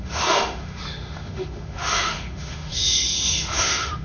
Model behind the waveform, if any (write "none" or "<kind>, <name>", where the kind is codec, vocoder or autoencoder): autoencoder, DAC-VAE